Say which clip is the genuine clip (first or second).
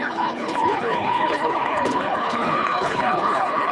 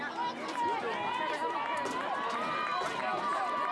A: second